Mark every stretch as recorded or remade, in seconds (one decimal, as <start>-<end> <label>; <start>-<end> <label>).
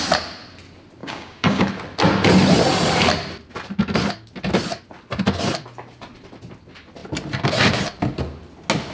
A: 0.0-1.0 recorded; 1.0-1.7 remade; 1.7-8.9 recorded